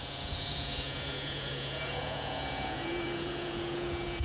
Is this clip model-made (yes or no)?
yes